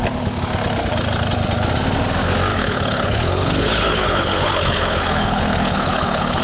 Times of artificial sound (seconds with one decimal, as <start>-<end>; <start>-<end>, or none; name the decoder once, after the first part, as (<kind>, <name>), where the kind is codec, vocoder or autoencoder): 2.5-6.4 (codec, HILCodec)